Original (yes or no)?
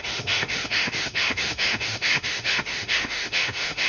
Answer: no